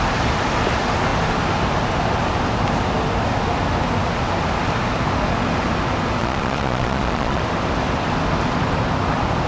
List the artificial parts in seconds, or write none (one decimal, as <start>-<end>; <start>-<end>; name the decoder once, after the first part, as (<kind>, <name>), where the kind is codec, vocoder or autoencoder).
6.2-7.4 (vocoder, Vocos)